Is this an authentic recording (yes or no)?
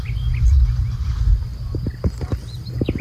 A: yes